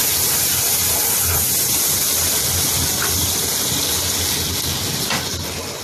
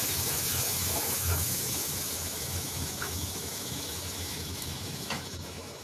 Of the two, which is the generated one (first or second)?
second